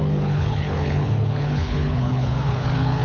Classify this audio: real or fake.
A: fake